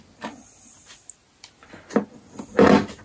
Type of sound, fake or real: real